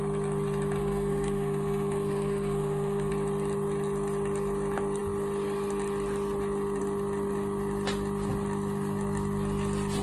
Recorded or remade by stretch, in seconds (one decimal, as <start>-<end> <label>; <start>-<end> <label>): 0.0-0.8 recorded; 0.8-3.1 remade; 3.1-10.0 recorded